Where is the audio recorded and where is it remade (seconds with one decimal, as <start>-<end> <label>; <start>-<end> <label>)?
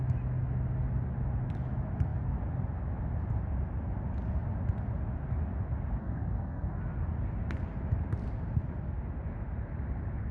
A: 0.0-6.0 recorded; 6.0-6.8 remade; 6.8-10.3 recorded